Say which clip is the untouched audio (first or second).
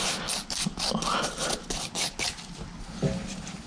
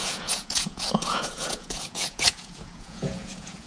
first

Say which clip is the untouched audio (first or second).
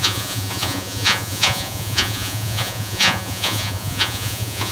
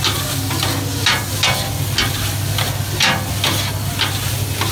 second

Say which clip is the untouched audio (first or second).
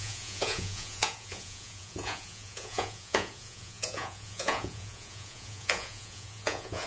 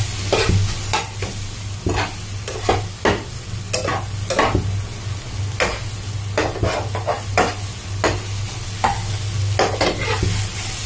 second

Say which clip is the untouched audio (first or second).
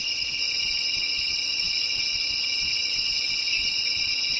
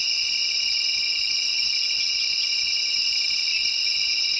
second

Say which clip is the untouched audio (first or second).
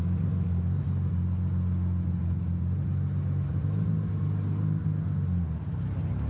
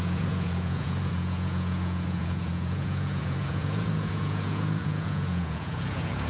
first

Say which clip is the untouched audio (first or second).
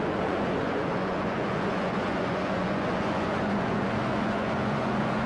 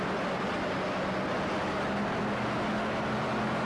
second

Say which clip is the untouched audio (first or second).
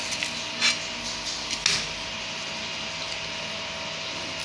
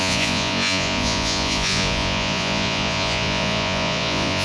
first